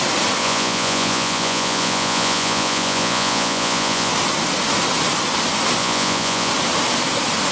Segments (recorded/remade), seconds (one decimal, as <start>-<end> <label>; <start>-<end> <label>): 0.0-0.4 recorded; 0.4-4.1 remade; 4.1-5.8 recorded; 5.8-6.5 remade; 6.5-7.5 recorded